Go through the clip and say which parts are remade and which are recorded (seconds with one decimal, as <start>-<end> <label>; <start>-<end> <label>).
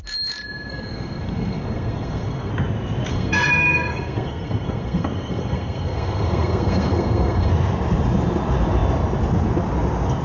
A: 0.0-0.7 recorded; 0.7-2.5 remade; 2.5-3.1 recorded; 3.1-7.5 remade; 7.5-10.2 recorded